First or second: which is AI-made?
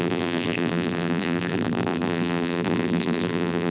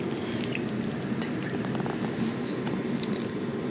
first